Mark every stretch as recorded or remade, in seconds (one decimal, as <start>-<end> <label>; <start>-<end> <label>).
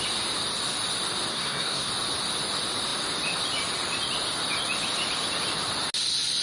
0.0-1.3 recorded; 1.3-1.9 remade; 1.9-6.4 recorded